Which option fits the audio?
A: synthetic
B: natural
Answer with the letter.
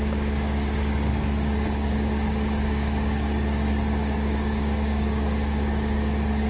A